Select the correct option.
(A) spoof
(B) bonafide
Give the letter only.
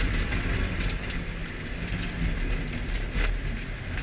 B